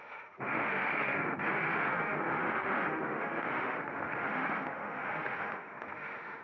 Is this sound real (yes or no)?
no